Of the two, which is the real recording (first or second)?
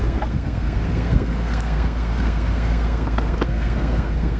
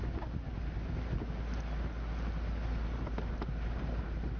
second